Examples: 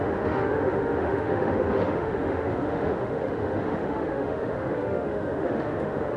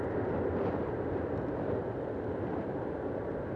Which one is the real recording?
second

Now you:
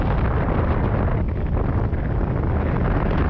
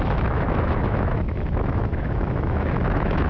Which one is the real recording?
first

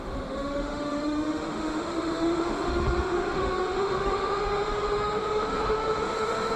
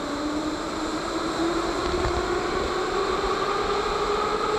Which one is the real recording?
second